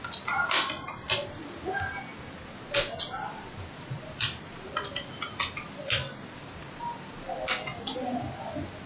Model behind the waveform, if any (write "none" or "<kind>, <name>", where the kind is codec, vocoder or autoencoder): none